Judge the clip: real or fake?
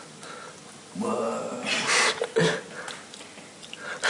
real